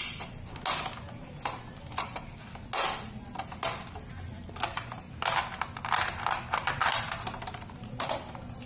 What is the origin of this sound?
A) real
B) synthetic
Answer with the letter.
A